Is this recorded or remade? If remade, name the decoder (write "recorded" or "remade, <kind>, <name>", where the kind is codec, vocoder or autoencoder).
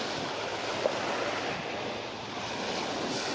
recorded